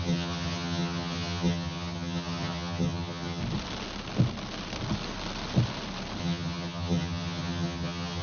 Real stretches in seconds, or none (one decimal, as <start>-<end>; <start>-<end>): 3.4-6.2